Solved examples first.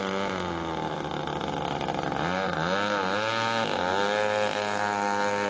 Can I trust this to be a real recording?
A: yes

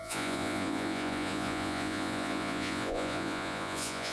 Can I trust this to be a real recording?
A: no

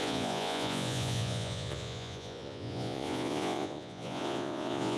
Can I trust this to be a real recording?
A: no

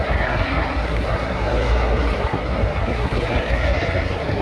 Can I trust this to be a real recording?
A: no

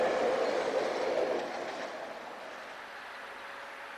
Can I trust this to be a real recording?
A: yes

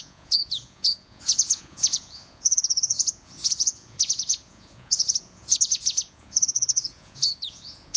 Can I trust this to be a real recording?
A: no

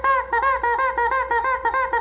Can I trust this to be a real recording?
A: yes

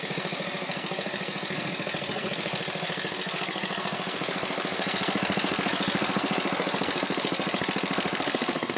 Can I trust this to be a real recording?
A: no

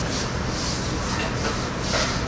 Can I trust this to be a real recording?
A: yes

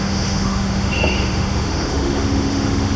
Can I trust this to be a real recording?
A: no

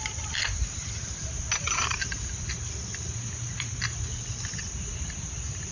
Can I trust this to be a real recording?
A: yes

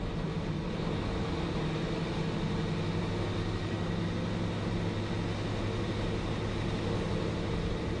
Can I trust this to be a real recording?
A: yes